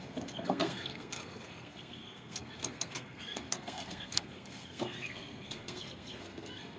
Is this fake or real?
fake